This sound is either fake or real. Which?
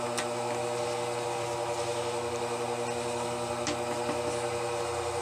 real